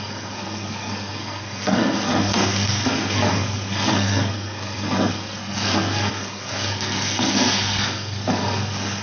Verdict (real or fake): fake